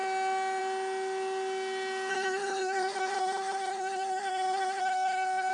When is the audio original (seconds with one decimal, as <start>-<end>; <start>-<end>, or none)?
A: 0.0-2.1